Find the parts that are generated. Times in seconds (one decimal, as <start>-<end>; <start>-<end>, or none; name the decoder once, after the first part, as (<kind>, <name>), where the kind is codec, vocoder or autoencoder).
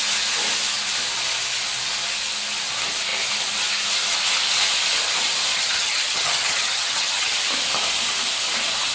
5.5-7.3 (vocoder, HiFi-GAN)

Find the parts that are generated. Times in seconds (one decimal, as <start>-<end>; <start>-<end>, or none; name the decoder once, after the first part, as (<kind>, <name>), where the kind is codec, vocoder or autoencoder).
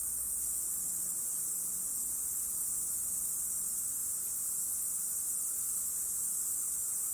none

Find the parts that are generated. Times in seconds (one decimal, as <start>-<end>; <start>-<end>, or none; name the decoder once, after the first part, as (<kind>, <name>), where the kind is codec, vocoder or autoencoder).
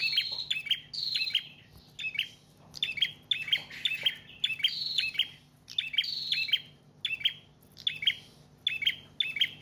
none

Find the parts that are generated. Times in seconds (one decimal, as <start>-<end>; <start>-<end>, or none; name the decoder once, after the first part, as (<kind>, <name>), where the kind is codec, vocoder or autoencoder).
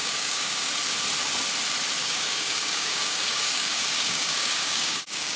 0.0-0.7 (codec, DAC); 2.0-5.4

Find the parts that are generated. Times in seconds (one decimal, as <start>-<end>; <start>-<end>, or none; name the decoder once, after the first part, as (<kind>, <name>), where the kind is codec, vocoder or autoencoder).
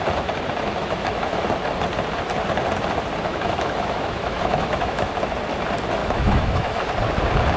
0.8-1.4 (autoencoder, DAC-VAE); 3.3-5.1; 6.0-6.8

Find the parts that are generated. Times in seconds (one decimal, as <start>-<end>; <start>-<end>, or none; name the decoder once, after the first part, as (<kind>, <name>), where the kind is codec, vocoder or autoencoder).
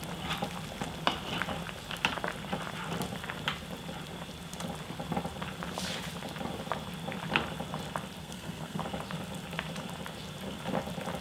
8.2-8.8 (codec, SNAC)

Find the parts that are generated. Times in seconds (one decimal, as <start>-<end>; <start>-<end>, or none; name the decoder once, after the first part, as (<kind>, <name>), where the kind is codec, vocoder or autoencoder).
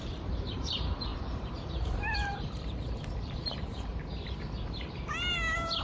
0.0-3.9 (vocoder, BigVGAN v2)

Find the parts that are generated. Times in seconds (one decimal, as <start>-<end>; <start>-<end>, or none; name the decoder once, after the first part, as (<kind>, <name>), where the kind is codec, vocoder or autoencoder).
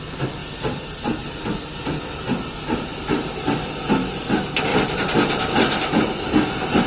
none